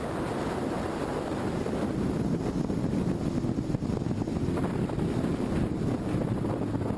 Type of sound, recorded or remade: recorded